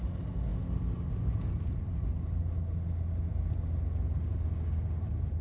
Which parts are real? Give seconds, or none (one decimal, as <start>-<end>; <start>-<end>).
0.0-5.4